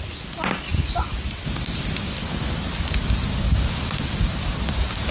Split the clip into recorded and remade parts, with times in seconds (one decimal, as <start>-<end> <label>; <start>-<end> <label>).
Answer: 0.0-5.1 recorded